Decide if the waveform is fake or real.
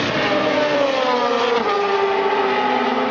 real